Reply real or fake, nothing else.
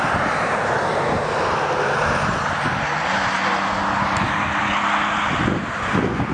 real